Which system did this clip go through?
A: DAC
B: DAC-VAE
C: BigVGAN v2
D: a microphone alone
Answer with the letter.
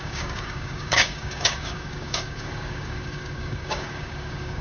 A